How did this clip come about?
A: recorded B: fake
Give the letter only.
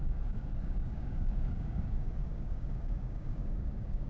B